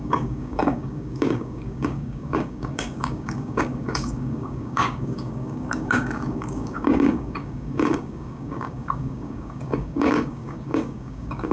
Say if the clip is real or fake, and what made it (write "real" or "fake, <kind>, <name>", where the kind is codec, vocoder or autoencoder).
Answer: fake, codec, DAC